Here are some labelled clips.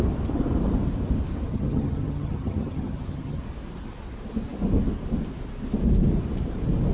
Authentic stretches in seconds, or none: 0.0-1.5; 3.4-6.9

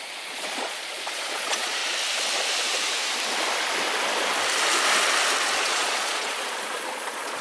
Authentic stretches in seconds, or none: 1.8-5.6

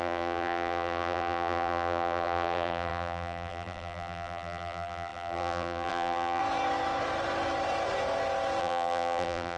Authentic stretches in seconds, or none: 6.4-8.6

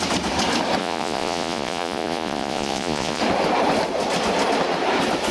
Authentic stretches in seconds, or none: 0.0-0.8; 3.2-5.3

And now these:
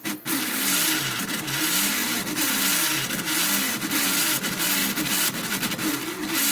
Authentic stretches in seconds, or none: 0.0-6.5

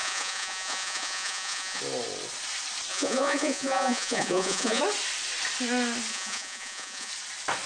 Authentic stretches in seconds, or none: 1.8-2.9; 4.8-6.1; 7.1-7.7